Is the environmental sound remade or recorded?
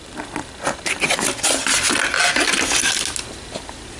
recorded